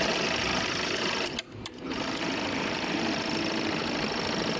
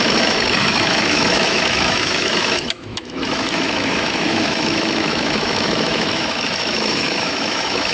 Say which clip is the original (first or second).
first